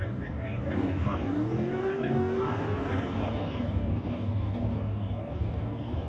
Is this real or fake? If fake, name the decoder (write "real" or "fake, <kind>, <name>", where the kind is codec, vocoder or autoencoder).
fake, codec, DAC